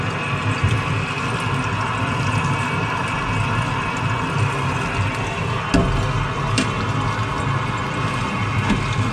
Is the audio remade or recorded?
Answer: recorded